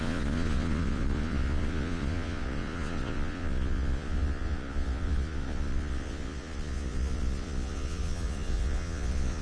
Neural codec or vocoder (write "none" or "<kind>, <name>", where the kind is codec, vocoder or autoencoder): vocoder, Vocos